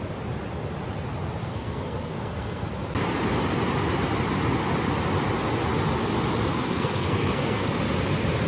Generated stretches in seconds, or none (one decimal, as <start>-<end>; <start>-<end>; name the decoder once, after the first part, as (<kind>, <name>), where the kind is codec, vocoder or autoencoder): 1.4-2.7 (codec, SNAC); 6.5-7.8